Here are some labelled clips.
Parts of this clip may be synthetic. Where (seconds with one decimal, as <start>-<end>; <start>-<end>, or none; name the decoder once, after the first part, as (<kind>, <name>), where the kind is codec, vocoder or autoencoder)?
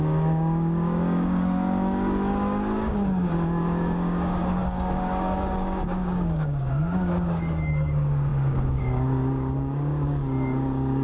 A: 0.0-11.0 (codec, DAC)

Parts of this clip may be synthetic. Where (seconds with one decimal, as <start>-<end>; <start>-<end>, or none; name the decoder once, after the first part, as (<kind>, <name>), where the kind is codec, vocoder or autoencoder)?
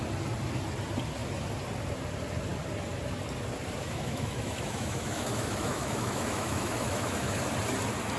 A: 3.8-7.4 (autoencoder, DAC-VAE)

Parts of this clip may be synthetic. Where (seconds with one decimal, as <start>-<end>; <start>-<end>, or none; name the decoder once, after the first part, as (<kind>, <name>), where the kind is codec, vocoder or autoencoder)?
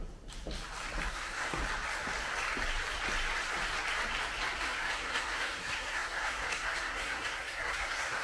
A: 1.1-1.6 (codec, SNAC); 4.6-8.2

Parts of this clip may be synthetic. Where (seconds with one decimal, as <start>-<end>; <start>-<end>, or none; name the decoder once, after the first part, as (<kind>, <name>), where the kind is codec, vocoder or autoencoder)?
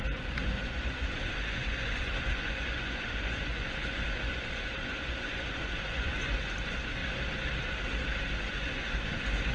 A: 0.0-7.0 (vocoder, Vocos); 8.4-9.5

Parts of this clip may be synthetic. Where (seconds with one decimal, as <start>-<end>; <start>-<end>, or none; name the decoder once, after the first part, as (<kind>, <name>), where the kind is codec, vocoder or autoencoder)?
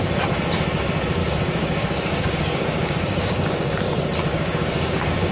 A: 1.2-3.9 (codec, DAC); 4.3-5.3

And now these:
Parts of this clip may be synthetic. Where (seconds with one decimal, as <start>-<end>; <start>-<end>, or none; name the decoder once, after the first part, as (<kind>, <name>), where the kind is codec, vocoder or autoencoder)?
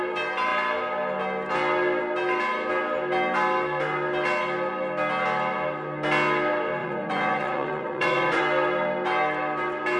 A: 6.8-8.4 (vocoder, Vocos)